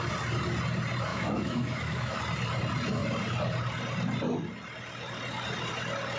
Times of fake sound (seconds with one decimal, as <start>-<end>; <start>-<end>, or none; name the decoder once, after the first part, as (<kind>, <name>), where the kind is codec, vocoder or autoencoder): 1.1-2.2 (autoencoder, DAC-VAE)